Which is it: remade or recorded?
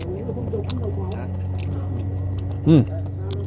recorded